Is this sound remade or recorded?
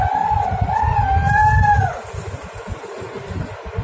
recorded